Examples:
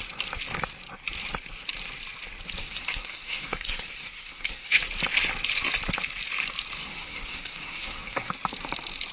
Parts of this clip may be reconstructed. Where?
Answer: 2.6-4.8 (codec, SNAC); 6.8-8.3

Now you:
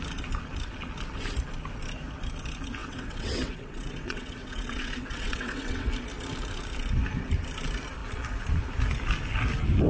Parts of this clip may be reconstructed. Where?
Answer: 2.8-5.9 (vocoder, WaveNeXt)